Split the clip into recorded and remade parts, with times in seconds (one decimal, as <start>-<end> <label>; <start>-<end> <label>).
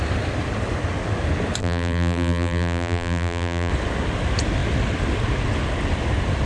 0.0-1.6 recorded; 1.6-3.7 remade; 3.7-6.5 recorded